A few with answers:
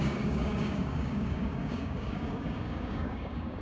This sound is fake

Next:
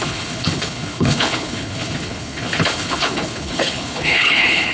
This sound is fake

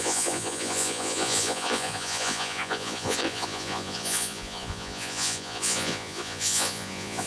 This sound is fake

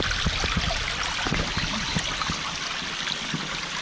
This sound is real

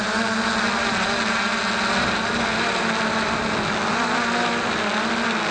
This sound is real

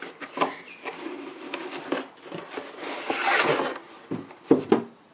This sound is real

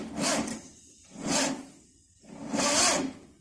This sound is real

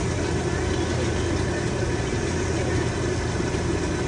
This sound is real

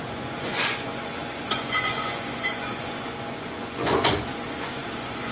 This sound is fake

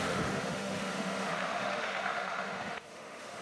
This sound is fake